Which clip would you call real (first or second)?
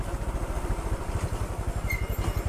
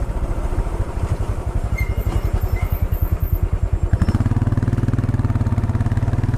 first